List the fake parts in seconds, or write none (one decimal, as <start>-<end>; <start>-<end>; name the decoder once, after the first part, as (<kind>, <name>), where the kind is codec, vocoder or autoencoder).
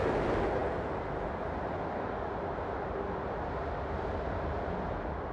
none